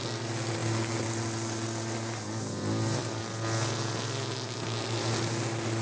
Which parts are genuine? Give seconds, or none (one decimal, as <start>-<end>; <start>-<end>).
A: 0.0-5.8